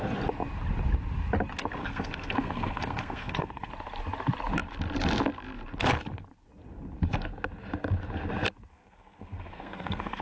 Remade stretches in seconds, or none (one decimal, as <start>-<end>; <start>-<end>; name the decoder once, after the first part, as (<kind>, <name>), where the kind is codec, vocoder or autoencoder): 1.8-3.7 (codec, SNAC); 8.7-10.2